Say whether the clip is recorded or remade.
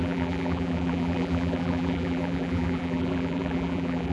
remade